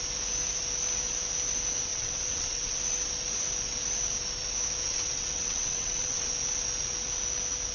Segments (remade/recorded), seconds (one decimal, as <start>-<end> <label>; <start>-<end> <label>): 0.0-1.9 recorded; 1.9-2.8 remade; 2.8-4.8 recorded; 4.8-6.3 remade; 6.3-7.7 recorded